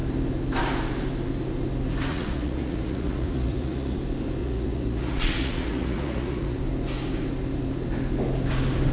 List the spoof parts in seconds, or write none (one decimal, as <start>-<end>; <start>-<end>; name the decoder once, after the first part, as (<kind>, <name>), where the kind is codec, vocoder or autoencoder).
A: 2.1-4.0 (vocoder, Vocos); 4.4-6.6